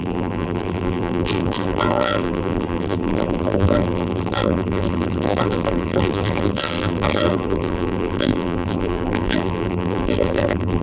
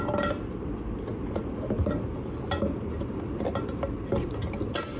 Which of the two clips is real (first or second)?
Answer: second